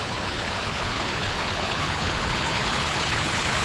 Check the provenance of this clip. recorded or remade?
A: remade